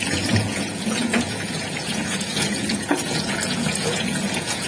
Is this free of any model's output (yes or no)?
no